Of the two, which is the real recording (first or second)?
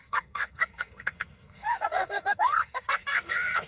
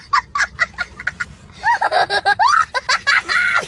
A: second